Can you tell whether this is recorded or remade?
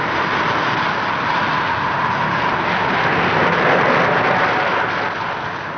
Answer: recorded